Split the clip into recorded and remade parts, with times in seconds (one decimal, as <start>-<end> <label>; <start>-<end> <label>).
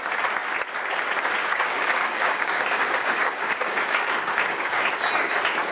0.0-1.5 recorded; 1.5-4.9 remade; 4.9-5.7 recorded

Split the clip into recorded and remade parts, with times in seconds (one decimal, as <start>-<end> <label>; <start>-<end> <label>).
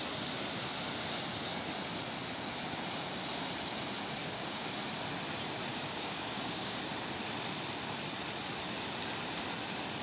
0.0-4.2 recorded; 4.2-4.7 remade; 4.7-5.7 recorded; 5.7-6.8 remade; 6.8-10.0 recorded